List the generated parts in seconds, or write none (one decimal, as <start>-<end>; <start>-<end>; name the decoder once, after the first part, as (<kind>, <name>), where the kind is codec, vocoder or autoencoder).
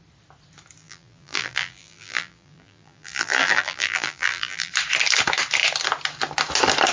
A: 0.8-4.7 (vocoder, BigVGAN v2)